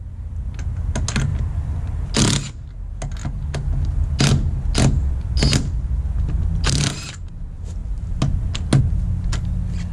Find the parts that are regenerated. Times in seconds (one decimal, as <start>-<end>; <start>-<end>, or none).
none